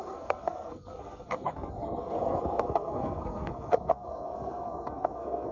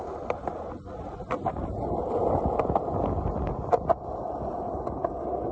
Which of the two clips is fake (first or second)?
first